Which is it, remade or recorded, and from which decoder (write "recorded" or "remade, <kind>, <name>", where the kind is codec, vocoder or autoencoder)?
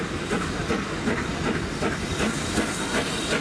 recorded